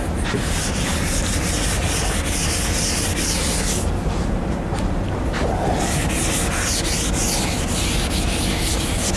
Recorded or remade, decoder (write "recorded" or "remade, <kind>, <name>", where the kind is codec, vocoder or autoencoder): recorded